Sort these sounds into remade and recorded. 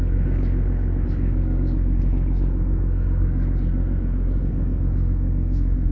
remade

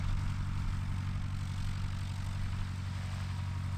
recorded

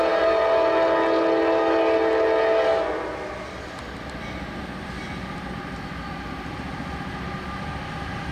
recorded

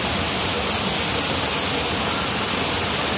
recorded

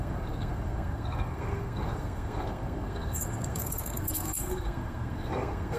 remade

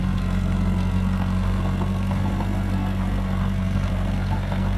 remade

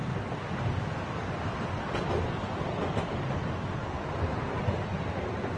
recorded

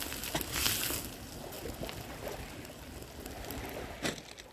recorded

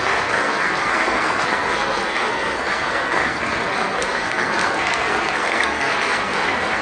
remade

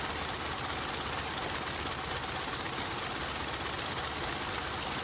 recorded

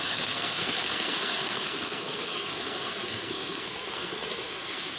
remade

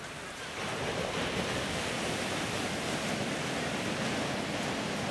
recorded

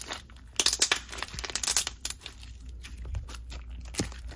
recorded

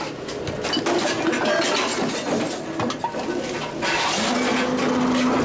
recorded